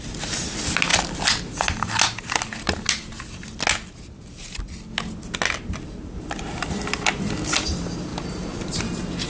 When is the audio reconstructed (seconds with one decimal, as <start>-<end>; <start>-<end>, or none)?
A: none